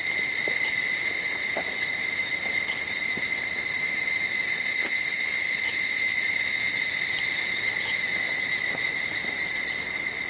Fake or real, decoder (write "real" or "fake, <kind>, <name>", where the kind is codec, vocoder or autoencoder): real